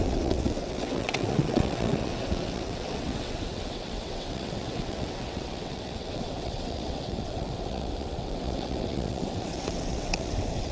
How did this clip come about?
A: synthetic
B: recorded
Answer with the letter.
A